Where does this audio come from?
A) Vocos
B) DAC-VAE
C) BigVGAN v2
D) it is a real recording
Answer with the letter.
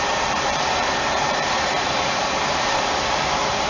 C